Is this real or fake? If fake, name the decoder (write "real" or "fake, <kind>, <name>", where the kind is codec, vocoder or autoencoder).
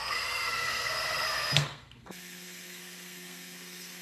fake, codec, SNAC